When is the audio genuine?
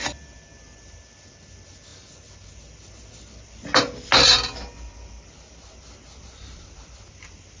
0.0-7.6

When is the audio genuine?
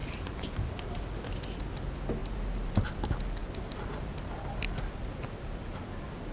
1.0-2.2; 2.9-6.3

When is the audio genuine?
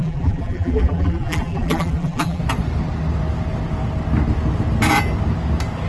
2.4-5.9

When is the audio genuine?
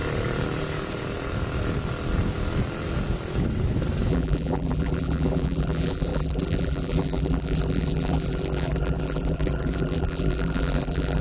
0.0-4.1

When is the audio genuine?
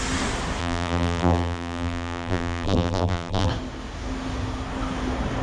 0.0-0.6; 3.5-5.4